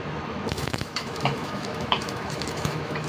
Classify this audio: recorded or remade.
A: remade